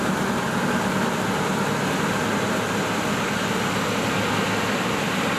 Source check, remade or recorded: recorded